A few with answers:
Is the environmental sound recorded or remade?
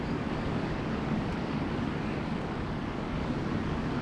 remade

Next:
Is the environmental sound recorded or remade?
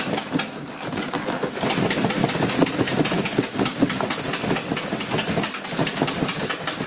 recorded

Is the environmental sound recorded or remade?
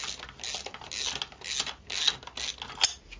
recorded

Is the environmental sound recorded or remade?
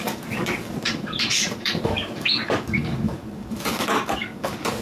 remade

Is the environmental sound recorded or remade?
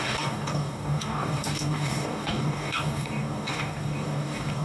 remade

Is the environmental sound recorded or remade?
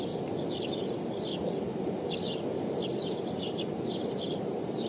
recorded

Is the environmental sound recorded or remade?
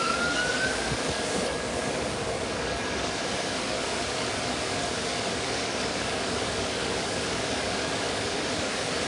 remade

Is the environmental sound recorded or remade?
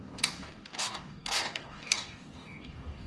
remade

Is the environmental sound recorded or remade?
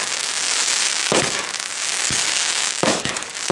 remade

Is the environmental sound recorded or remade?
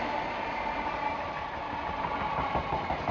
recorded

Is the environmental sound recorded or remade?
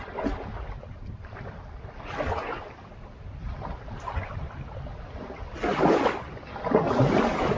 recorded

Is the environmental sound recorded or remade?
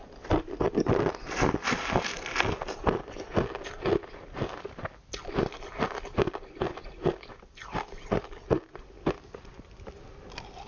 recorded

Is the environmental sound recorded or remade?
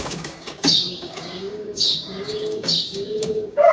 remade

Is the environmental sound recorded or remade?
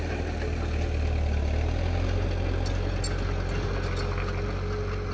recorded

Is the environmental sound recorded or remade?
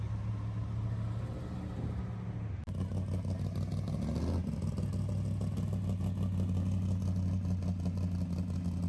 recorded